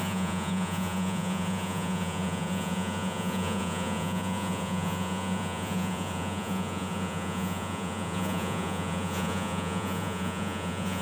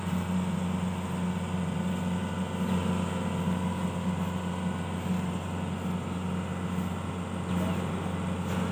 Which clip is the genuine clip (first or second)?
second